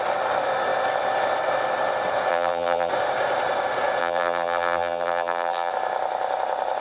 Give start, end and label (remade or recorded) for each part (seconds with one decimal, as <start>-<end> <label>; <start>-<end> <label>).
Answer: 0.0-2.3 recorded; 2.3-2.9 remade; 2.9-4.0 recorded; 4.0-5.7 remade; 5.7-6.8 recorded